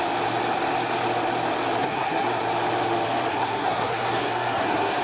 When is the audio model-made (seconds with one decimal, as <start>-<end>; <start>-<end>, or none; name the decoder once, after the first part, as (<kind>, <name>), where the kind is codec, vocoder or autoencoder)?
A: 1.8-2.4 (codec, SNAC); 3.3-5.0